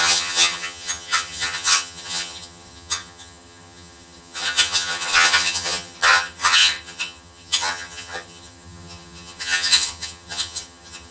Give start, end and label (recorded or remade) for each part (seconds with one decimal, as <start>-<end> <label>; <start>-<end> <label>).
0.0-11.1 remade